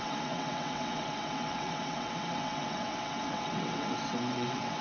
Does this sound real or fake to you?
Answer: fake